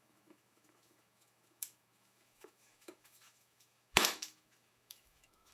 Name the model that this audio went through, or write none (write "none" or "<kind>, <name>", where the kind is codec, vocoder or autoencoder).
autoencoder, DAC-VAE